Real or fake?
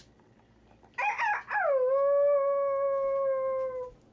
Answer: real